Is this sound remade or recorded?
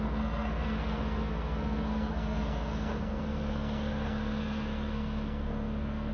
remade